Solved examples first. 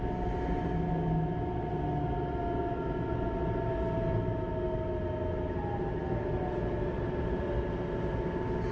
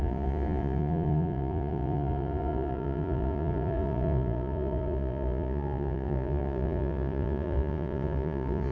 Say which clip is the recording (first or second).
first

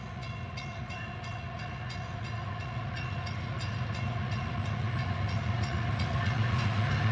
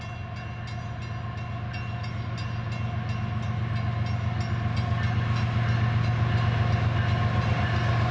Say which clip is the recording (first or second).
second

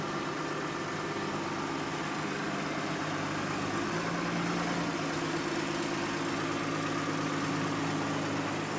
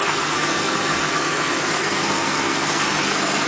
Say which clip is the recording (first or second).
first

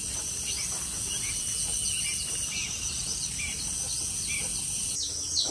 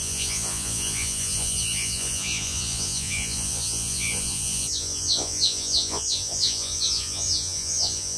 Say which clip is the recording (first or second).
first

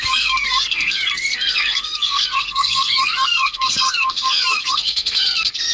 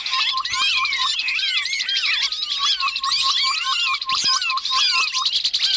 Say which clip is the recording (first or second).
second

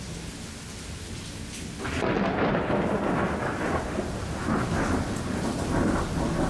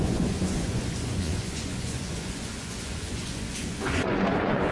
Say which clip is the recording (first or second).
first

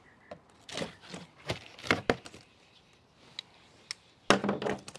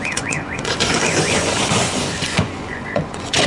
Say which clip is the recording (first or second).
first